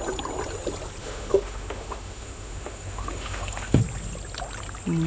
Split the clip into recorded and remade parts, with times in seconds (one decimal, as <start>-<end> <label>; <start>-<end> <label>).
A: 0.0-1.0 recorded; 1.0-3.8 remade; 3.8-5.1 recorded